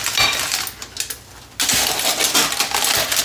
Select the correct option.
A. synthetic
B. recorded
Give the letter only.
B